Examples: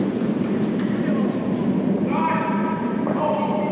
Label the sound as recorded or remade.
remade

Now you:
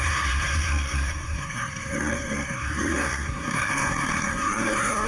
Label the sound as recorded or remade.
remade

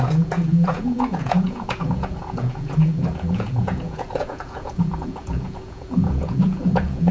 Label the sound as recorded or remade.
remade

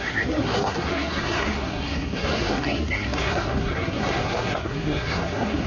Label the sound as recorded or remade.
remade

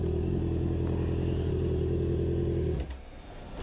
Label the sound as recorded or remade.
recorded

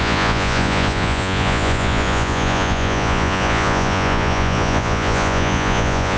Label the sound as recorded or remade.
remade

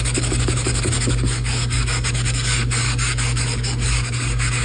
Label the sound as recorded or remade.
remade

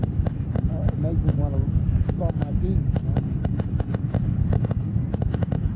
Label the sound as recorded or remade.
recorded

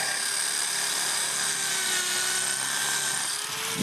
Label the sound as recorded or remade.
recorded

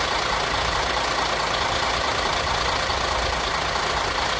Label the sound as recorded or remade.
recorded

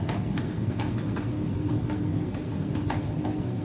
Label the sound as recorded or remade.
remade